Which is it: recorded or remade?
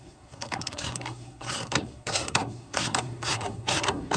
remade